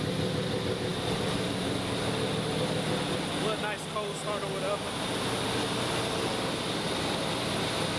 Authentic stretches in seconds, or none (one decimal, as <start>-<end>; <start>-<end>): 0.0-8.0